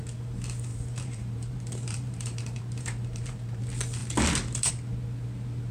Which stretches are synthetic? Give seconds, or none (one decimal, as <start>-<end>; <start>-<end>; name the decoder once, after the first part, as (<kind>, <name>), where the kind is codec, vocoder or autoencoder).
0.7-3.6 (vocoder, BigVGAN v2)